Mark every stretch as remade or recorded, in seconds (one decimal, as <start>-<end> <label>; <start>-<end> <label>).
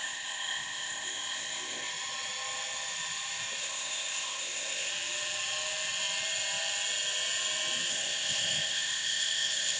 0.0-1.9 remade; 1.9-3.6 recorded; 3.6-4.9 remade; 4.9-7.9 recorded; 7.9-9.8 remade